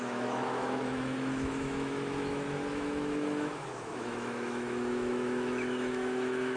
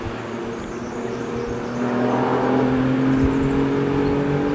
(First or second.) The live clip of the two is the second